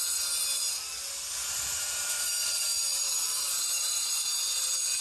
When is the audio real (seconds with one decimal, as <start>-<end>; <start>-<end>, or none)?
0.0-1.4; 4.4-5.0